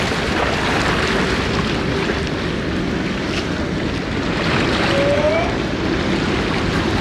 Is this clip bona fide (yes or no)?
yes